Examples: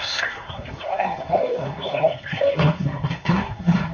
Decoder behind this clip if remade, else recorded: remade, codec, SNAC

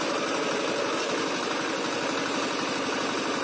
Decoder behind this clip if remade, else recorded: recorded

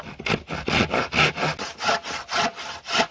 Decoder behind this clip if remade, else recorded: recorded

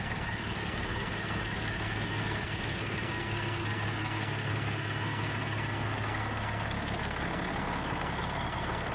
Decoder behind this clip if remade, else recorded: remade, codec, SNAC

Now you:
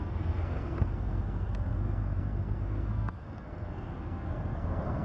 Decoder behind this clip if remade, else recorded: remade, codec, SNAC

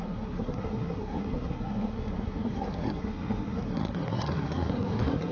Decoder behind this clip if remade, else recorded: remade, codec, SNAC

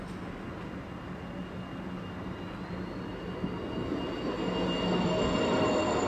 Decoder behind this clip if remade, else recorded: recorded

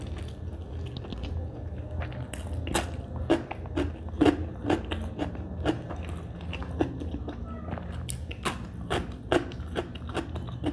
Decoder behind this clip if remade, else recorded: recorded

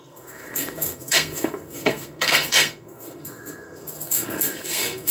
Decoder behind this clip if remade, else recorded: remade, codec, SNAC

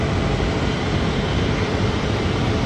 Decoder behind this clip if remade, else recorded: recorded